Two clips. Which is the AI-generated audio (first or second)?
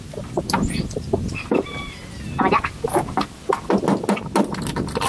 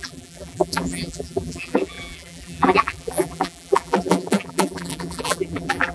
second